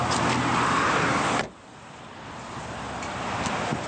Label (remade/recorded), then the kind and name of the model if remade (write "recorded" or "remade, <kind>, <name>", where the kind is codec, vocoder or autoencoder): recorded